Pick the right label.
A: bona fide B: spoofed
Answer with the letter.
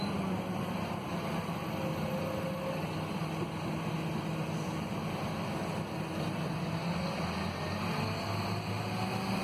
A